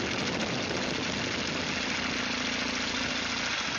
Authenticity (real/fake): real